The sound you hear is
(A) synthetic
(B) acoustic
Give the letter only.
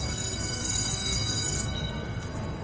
A